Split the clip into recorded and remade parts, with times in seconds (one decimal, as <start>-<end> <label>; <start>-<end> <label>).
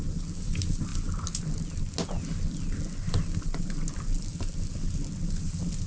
0.0-5.9 recorded